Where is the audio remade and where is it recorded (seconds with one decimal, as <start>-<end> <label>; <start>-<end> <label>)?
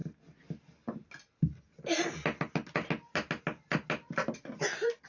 0.0-5.1 recorded